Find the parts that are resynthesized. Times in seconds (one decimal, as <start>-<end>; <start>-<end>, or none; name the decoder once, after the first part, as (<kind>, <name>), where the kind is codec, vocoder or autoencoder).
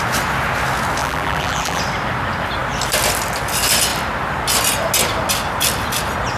1.0-1.8 (vocoder, BigVGAN v2)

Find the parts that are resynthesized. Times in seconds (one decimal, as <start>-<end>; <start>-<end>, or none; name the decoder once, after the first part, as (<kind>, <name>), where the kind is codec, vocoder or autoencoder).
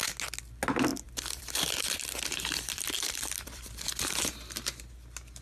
0.9-4.1 (vocoder, BigVGAN v2)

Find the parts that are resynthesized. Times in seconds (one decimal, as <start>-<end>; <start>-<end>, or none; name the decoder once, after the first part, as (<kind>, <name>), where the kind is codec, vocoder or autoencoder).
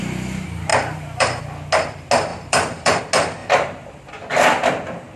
0.7-1.4 (vocoder, BigVGAN v2); 2.3-3.0; 3.4-4.1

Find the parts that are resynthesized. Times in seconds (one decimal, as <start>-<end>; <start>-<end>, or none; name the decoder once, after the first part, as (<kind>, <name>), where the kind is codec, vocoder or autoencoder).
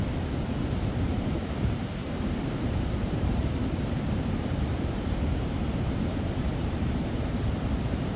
0.7-8.2 (vocoder, BigVGAN v2)